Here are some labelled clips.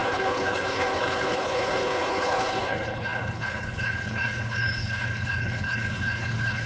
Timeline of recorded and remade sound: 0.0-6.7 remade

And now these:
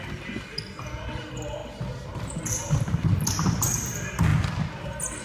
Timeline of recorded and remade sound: 0.0-5.2 recorded

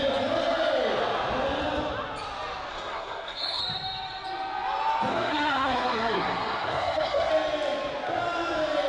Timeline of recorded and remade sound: 0.0-2.7 recorded; 2.7-3.6 remade; 3.6-5.1 recorded; 5.1-7.3 remade; 7.3-8.9 recorded

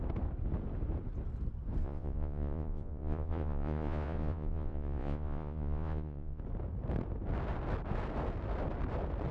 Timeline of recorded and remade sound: 0.0-1.8 recorded; 1.8-6.4 remade; 6.4-9.3 recorded